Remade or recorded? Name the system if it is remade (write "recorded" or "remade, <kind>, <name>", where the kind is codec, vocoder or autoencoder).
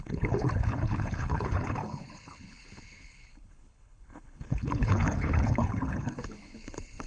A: remade, codec, HILCodec